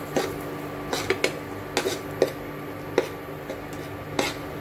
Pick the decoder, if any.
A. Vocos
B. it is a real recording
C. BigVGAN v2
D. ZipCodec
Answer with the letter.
B